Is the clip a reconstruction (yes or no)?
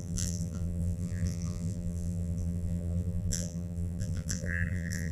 yes